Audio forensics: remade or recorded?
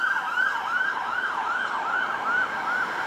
remade